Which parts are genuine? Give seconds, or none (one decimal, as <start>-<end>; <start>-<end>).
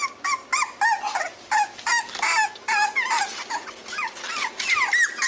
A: 0.0-5.3